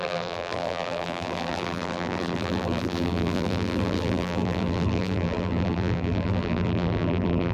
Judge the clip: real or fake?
fake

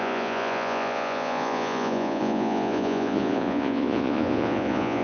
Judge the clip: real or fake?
fake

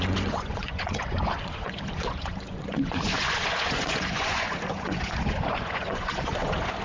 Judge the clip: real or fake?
fake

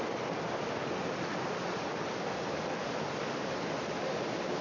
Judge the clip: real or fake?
real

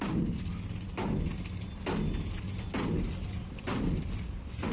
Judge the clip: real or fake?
real